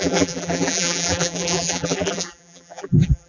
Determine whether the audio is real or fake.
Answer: fake